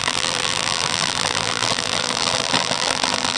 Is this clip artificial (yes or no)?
yes